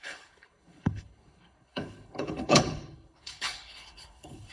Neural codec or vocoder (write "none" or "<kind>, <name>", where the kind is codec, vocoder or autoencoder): codec, HILCodec